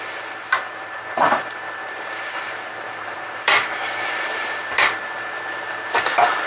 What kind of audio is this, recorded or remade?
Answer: remade